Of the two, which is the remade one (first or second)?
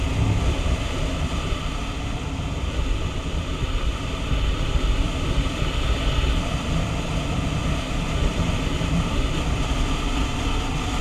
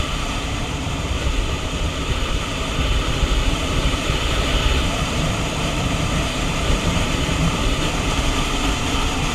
second